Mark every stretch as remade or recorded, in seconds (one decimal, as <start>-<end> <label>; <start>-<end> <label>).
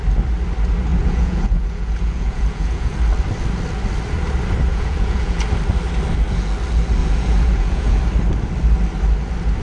0.0-0.9 recorded; 0.9-2.9 remade; 2.9-4.7 recorded; 4.7-5.4 remade; 5.4-7.0 recorded; 7.0-8.0 remade; 8.0-9.6 recorded